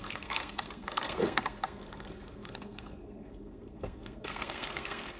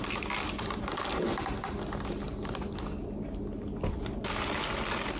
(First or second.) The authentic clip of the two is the second